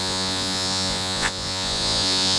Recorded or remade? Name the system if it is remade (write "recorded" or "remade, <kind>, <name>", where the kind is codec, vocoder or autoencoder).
remade, vocoder, Vocos